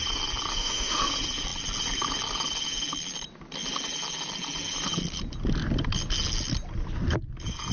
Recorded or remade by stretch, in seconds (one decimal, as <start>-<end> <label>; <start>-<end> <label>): 0.0-0.5 recorded; 0.5-1.1 remade; 1.1-7.7 recorded